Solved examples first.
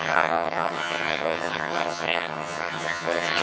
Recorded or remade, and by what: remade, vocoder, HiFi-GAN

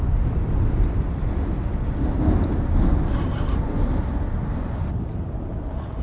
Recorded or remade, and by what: recorded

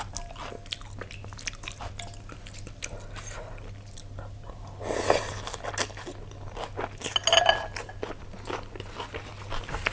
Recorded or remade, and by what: recorded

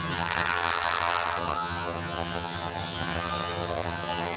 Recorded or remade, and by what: remade, vocoder, HiFi-GAN